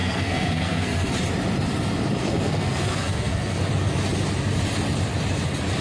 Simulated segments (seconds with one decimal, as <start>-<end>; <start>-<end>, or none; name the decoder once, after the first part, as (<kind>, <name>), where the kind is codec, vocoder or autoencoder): 0.0-1.1 (codec, SNAC); 2.2-3.6